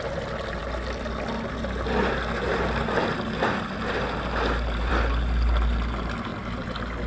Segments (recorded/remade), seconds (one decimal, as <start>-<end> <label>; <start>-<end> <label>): 0.0-7.1 recorded

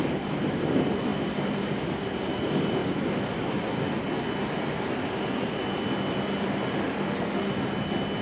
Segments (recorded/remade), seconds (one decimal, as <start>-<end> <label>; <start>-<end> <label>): 0.0-6.8 recorded; 6.8-7.5 remade; 7.5-8.2 recorded